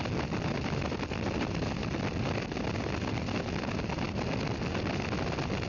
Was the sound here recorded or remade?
recorded